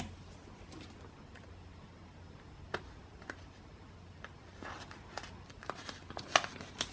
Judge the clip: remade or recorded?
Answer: recorded